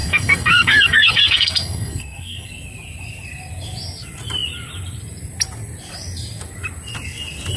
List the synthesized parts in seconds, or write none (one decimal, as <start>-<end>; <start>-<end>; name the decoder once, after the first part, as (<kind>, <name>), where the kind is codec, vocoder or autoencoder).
0.0-2.5 (codec, SNAC)